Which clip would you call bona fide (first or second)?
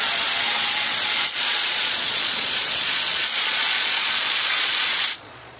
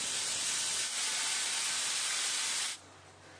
second